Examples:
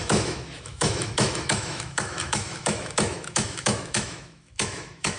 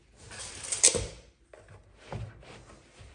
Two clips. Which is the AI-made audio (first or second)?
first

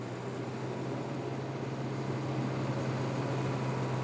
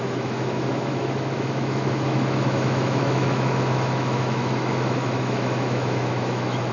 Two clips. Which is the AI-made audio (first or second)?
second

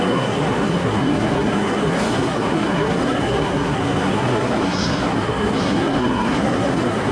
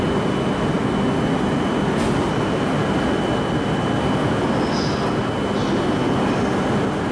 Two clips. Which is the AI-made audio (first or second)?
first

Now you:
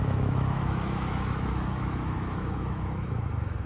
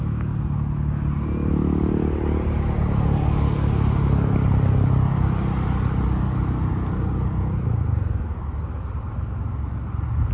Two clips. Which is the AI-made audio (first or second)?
first